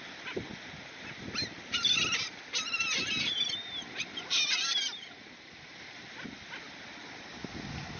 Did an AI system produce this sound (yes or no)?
no